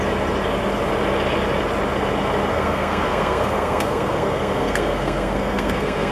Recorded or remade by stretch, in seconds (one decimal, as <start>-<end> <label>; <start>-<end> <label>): 0.0-2.5 recorded; 2.5-6.1 remade